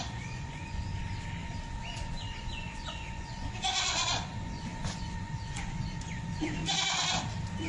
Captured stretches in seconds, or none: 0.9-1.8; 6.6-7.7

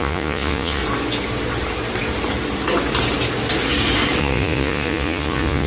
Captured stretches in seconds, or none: 0.8-4.2

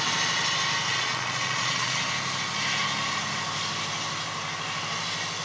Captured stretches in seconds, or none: 0.0-0.9; 2.0-5.4

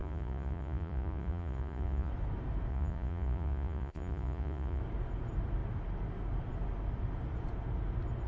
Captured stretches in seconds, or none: 2.1-2.7; 4.8-8.3

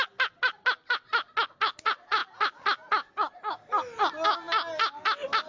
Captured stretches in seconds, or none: 0.0-5.5